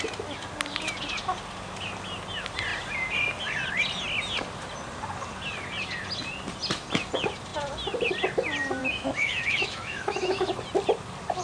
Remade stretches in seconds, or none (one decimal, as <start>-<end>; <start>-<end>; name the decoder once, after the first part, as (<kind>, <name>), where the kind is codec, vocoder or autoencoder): 8.8-10.5 (autoencoder, DAC-VAE)